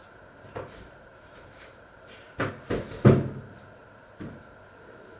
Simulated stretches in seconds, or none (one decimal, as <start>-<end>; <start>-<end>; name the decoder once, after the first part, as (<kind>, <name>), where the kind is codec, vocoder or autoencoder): 0.0-2.5 (vocoder, BigVGAN v2)